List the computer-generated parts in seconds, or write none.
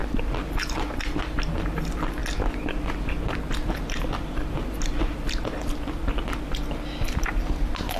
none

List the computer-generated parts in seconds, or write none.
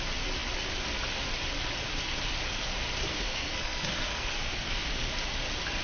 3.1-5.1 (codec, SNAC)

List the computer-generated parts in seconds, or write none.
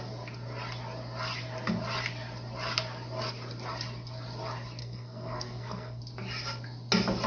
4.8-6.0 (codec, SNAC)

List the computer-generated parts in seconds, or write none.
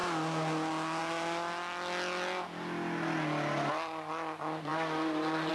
none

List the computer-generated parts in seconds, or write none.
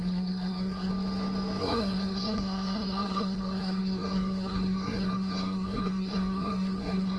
0.0-0.9 (codec, SNAC); 1.6-7.2